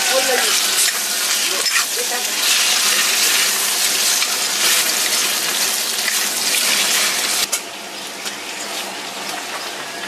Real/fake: real